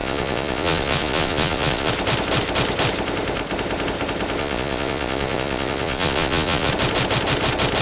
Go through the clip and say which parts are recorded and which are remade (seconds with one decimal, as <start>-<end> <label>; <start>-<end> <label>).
0.0-1.9 remade; 1.9-4.4 recorded; 4.4-6.7 remade; 6.7-7.8 recorded